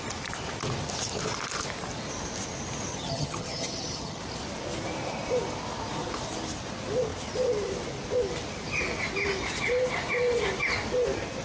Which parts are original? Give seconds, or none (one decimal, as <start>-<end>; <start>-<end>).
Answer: 0.0-2.9; 4.2-11.4